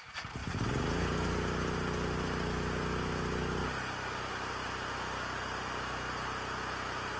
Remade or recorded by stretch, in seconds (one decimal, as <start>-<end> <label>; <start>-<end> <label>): 0.0-7.2 recorded